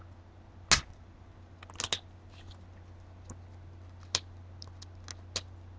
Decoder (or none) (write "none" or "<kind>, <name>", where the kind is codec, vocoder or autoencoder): none